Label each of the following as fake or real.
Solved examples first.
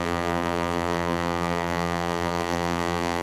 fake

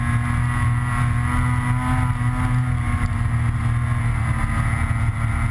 real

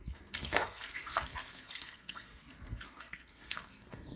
fake